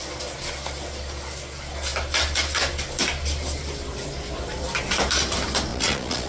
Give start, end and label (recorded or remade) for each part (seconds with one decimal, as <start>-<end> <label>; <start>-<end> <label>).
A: 0.0-5.7 recorded; 5.7-6.3 remade